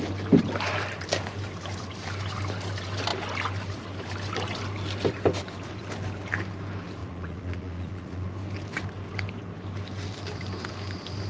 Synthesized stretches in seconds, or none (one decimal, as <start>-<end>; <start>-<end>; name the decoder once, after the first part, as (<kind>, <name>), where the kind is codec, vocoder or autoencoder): 7.0-8.3 (vocoder, Vocos)